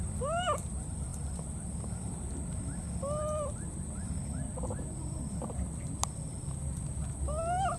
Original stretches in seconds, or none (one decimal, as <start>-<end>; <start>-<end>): 0.0-7.8